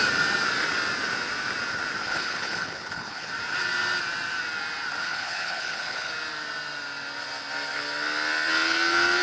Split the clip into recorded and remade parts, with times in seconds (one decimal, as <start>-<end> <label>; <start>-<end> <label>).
0.0-2.0 recorded; 2.0-3.3 remade; 3.3-5.0 recorded; 5.0-6.1 remade; 6.1-9.2 recorded